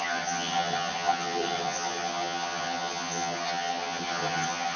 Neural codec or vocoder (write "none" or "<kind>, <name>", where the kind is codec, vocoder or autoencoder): vocoder, HiFi-GAN